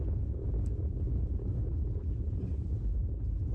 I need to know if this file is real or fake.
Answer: real